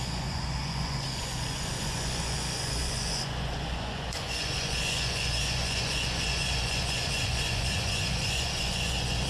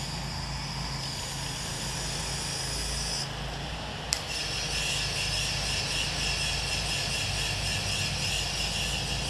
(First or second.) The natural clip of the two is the second